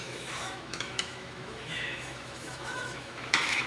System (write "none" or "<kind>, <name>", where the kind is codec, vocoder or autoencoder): autoencoder, DAC-VAE